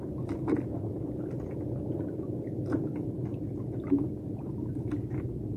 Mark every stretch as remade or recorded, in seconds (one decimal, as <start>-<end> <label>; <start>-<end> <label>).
0.0-2.9 recorded; 2.9-3.4 remade; 3.4-5.6 recorded